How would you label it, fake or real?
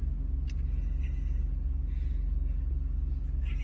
real